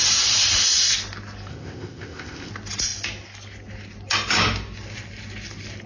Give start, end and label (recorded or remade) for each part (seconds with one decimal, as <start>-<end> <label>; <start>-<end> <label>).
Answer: 0.0-1.5 recorded; 1.5-2.5 remade; 2.5-5.9 recorded